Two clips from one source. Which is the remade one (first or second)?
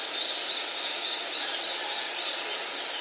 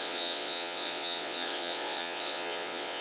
second